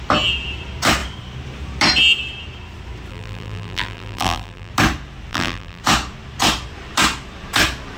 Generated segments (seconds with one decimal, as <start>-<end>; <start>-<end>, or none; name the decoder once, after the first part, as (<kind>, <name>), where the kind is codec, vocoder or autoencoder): 3.1-4.7 (vocoder, BigVGAN v2); 5.3-5.8